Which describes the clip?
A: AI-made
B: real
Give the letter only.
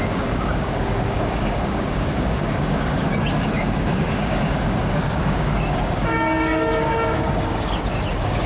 A